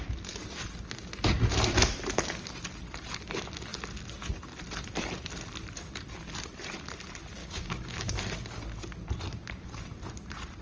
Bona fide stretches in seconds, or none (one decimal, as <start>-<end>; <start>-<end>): 0.0-7.4; 8.1-10.6